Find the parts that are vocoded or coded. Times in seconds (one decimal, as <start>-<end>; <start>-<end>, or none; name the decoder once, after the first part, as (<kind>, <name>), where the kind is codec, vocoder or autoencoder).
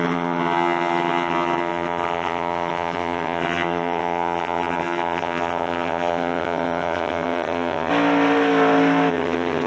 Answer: 0.0-7.9 (vocoder, HiFi-GAN); 9.1-9.7